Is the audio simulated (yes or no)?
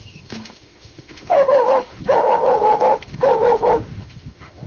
yes